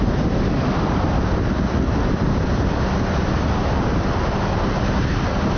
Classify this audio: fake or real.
real